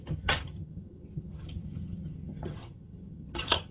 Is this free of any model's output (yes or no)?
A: no